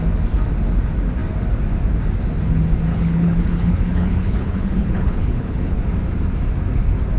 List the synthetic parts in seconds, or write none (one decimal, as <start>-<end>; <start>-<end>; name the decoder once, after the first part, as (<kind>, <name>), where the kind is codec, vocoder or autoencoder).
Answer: 2.9-5.8 (codec, HILCodec)